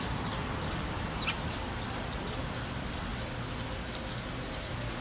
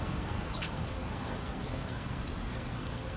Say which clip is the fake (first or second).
second